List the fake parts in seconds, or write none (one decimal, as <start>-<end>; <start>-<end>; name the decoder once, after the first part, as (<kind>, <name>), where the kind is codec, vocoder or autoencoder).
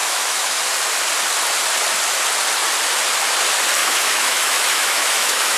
0.0-0.6 (autoencoder, DAC-VAE); 3.8-5.6